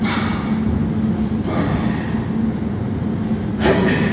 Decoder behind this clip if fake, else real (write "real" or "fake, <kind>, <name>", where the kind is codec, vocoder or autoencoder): real